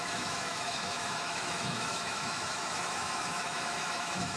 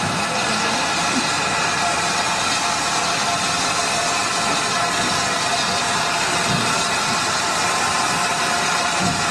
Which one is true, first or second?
second